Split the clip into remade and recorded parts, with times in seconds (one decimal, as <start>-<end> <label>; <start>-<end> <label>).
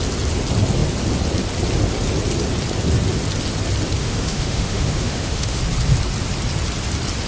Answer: 0.0-4.0 recorded; 4.0-5.6 remade; 5.6-7.3 recorded